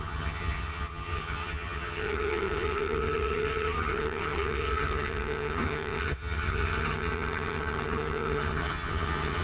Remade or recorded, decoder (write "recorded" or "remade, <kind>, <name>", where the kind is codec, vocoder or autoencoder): remade, vocoder, HiFi-GAN